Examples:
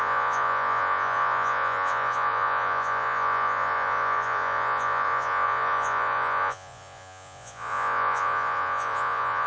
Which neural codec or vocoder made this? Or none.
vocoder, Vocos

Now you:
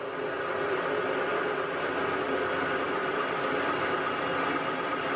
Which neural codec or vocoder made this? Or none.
none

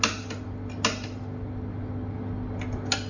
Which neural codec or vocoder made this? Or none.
none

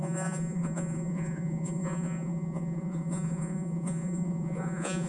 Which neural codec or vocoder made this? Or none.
vocoder, Vocos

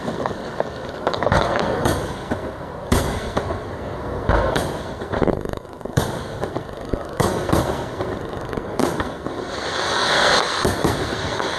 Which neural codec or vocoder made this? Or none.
codec, SNAC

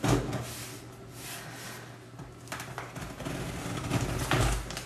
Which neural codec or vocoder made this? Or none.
none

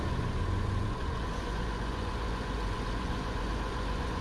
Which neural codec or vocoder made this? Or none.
vocoder, Vocos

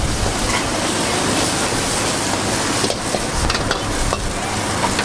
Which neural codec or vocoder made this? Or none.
none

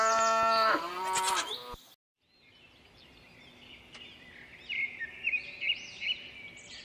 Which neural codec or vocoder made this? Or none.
none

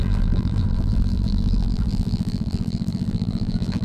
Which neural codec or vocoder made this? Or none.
vocoder, BigVGAN v2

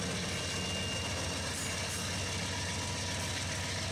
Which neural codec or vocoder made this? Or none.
none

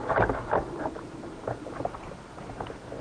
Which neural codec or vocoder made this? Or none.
none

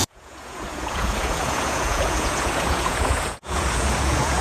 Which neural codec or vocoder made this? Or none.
vocoder, Vocos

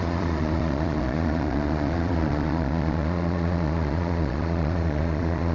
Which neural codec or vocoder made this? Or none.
vocoder, Vocos